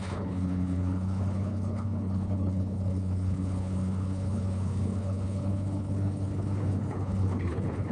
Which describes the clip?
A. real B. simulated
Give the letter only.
B